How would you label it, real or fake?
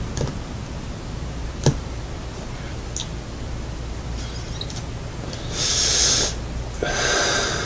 real